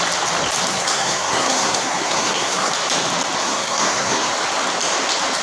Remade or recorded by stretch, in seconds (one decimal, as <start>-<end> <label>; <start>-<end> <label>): 0.0-0.7 recorded; 0.7-2.7 remade; 2.7-3.4 recorded; 3.4-4.3 remade; 4.3-5.4 recorded